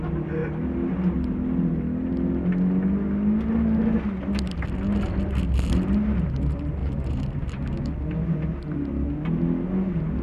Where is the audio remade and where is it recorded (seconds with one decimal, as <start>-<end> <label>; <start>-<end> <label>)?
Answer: 0.0-6.8 recorded; 6.8-7.4 remade; 7.4-10.2 recorded